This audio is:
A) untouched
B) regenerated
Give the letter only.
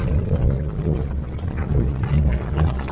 B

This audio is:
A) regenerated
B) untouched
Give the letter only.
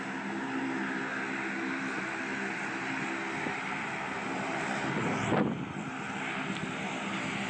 B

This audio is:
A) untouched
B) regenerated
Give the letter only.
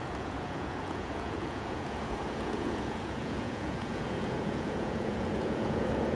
B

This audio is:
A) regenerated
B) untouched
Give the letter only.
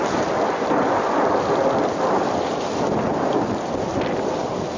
B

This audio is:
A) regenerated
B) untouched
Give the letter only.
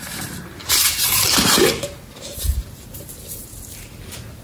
B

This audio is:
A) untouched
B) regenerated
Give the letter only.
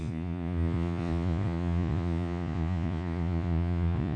B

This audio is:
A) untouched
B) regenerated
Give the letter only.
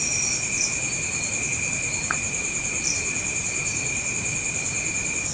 A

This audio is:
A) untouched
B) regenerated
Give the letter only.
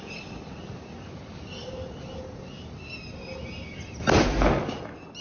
A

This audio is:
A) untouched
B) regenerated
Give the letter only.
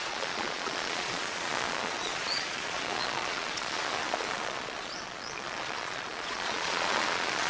B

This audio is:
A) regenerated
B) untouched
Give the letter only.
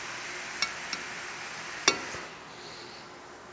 B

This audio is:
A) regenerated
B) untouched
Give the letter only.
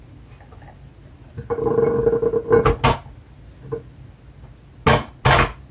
B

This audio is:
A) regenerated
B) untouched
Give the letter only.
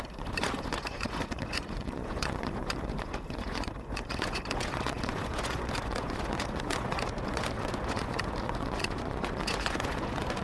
A